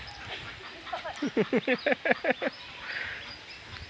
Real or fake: real